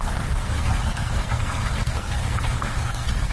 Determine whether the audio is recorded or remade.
remade